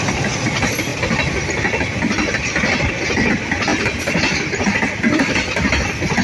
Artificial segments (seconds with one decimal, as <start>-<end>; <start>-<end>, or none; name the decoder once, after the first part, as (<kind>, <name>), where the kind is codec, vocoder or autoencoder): none